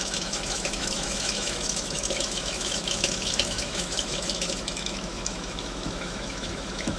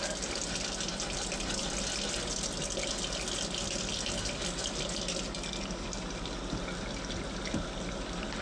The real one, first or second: second